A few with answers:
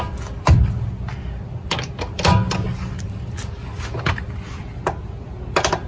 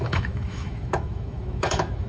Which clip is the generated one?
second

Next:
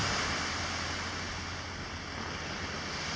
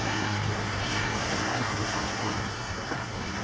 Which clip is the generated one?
second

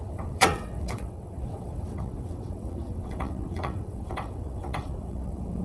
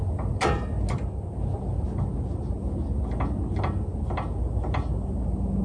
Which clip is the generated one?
first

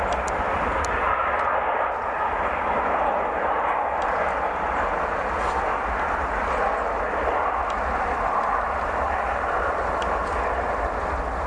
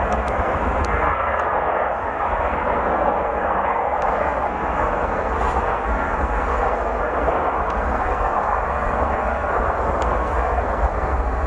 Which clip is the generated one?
second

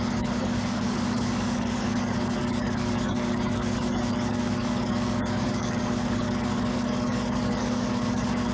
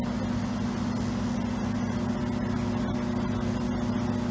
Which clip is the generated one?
first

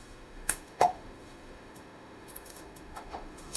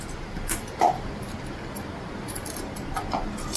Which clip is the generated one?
first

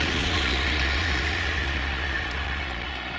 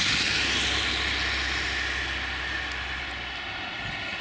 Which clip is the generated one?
first